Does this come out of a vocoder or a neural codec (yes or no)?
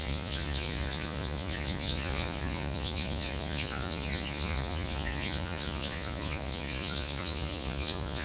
yes